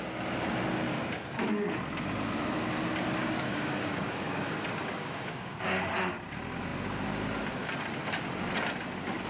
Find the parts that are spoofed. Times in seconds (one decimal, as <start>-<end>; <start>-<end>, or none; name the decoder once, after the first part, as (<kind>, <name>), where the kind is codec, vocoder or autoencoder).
3.2-5.5 (codec, DAC)